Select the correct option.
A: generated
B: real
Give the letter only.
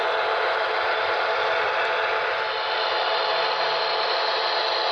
A